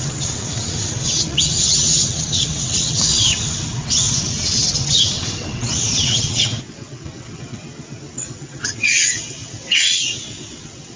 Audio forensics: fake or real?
fake